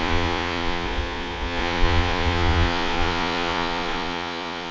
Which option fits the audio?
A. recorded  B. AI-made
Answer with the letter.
B